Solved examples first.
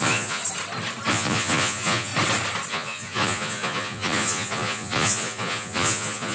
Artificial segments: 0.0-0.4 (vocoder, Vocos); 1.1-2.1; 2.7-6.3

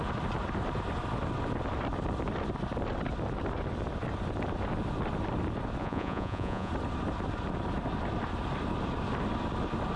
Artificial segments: 5.8-6.7 (vocoder, Vocos)